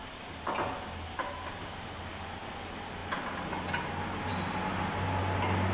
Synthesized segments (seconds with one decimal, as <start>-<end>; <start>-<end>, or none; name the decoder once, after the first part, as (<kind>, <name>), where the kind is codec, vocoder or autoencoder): none